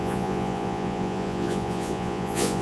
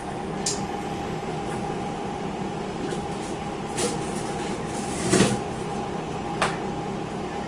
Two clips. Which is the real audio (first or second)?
second